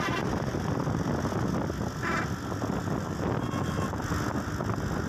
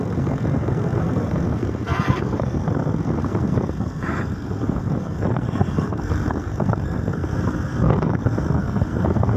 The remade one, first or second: second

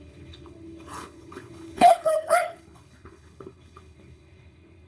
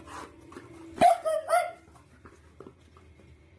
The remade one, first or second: first